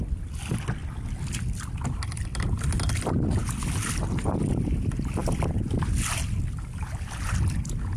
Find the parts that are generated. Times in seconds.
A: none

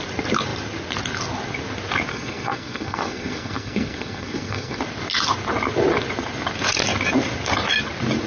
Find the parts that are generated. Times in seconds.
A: 2.1-4.8 (codec, SNAC)

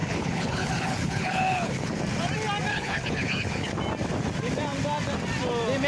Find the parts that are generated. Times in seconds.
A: 0.0-2.0 (codec, HILCodec); 2.7-3.7

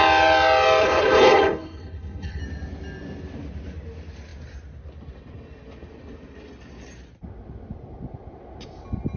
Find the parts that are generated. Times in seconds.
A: 0.8-2.4 (codec, HILCodec)

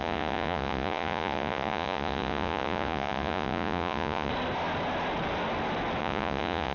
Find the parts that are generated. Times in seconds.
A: 0.0-4.3 (vocoder, Vocos); 6.0-6.7

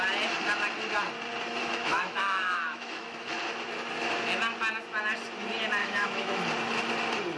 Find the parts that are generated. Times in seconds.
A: 1.6-3.4 (autoencoder, DAC-VAE); 5.8-6.4

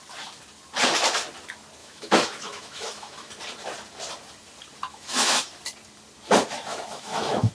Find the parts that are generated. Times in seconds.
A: 1.8-3.3 (autoencoder, DAC-VAE); 4.9-5.4; 6.7-7.5